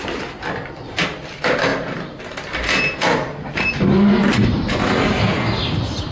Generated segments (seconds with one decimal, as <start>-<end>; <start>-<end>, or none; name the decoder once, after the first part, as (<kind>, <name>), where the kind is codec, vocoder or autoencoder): none